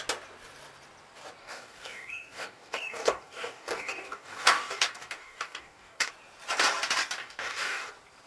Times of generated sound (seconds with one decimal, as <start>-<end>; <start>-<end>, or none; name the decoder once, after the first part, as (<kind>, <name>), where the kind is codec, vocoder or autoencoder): 1.4-6.1 (codec, DAC); 7.2-7.9